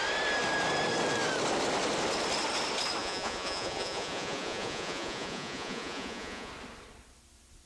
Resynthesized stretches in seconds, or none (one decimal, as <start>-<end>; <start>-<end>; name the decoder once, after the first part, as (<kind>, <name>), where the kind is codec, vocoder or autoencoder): 3.0-6.5 (vocoder, Vocos)